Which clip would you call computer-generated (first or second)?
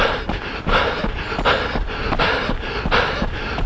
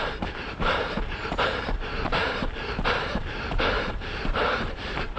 second